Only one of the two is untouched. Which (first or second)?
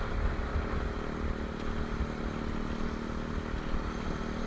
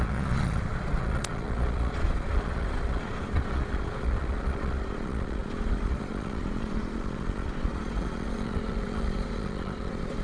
first